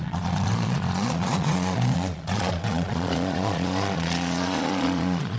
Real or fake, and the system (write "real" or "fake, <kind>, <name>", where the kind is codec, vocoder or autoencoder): fake, vocoder, Vocos